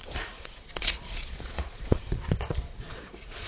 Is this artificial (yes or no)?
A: yes